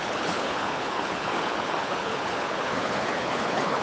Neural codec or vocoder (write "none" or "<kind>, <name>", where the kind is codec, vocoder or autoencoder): codec, HILCodec